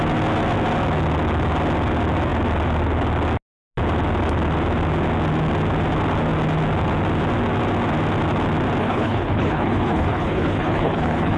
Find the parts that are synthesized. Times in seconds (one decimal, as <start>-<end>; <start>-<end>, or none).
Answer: 8.8-11.4